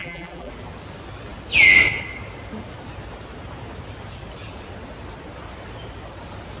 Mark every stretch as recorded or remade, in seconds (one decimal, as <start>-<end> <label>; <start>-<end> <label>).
0.0-0.5 remade; 0.5-6.6 recorded

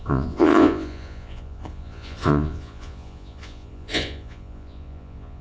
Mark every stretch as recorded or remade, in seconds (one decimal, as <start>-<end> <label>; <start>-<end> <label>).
0.0-5.4 remade